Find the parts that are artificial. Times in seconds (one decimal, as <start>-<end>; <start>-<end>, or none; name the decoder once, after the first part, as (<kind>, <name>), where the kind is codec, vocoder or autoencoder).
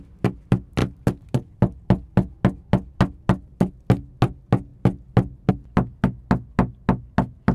none